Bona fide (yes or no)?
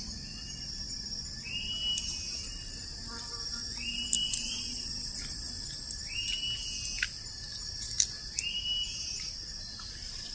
yes